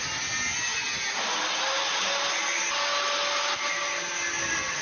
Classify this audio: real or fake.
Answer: real